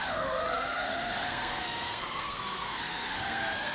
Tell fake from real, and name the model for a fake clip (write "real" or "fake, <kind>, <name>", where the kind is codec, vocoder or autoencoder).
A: fake, codec, SNAC